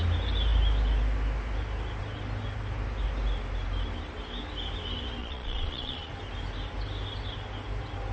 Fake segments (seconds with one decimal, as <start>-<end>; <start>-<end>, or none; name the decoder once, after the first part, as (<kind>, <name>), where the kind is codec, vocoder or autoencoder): 5.2-6.1 (vocoder, Vocos)